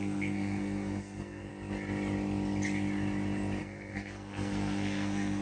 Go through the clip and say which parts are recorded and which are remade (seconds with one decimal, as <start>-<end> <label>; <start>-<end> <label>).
0.0-1.5 remade; 1.5-3.6 recorded; 3.6-5.4 remade